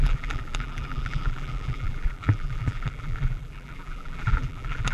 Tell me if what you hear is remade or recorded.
remade